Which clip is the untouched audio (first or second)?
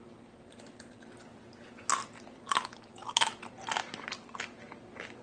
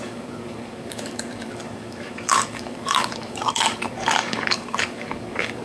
first